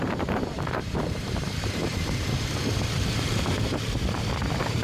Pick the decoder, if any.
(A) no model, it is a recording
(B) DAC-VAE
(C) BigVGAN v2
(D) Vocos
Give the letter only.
C